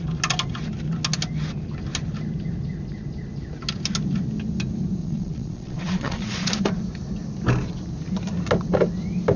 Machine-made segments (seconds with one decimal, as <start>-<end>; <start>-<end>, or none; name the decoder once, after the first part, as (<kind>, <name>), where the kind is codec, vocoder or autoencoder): 5.0-6.5 (vocoder, Vocos)